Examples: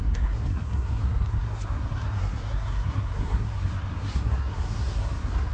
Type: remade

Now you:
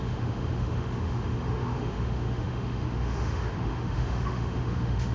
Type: remade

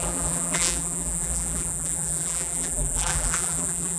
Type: remade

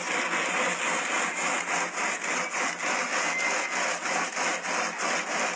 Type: recorded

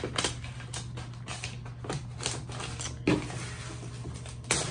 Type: recorded